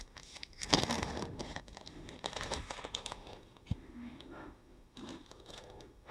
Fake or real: fake